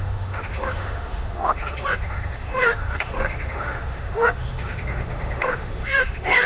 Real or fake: fake